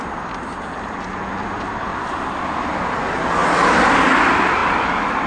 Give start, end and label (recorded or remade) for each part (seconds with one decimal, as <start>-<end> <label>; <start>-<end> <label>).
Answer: 0.0-1.9 recorded; 1.9-3.0 remade; 3.0-3.4 recorded; 3.4-4.0 remade; 4.0-4.6 recorded; 4.6-5.3 remade